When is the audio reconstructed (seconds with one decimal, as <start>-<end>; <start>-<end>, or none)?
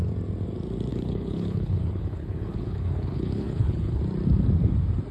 0.9-4.0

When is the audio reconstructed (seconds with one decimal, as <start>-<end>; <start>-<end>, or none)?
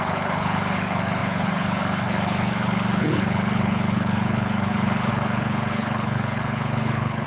0.0-7.3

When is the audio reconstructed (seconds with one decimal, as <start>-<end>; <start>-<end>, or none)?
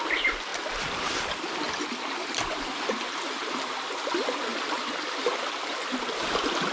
none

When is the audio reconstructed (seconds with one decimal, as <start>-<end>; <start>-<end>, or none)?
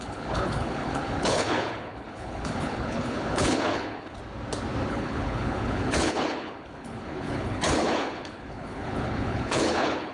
0.0-4.2; 4.9-10.1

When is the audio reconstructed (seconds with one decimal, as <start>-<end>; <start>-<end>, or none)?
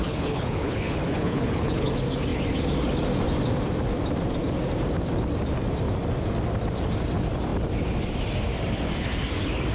0.0-1.9